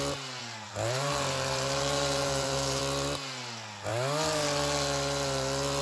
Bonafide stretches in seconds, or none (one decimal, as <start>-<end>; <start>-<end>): 0.0-0.4; 2.8-5.8